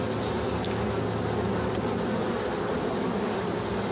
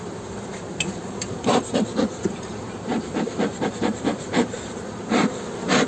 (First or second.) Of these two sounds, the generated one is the second